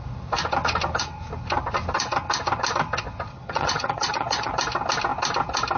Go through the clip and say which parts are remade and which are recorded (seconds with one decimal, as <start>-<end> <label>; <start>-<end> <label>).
0.0-3.3 recorded; 3.3-4.5 remade; 4.5-5.8 recorded